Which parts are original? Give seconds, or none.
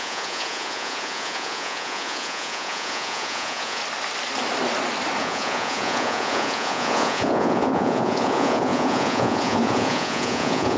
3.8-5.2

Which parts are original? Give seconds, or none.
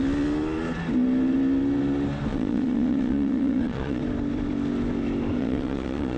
0.0-2.3; 4.0-5.4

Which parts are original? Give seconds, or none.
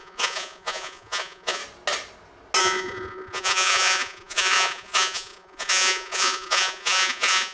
1.6-2.6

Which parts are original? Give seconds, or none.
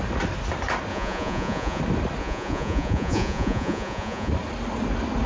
0.0-0.9; 1.8-2.2; 4.3-5.3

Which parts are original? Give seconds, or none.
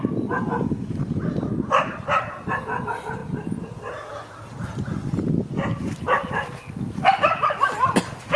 0.0-8.4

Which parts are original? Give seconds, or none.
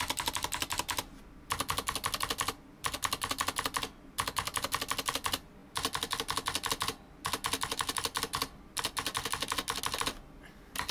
0.0-10.9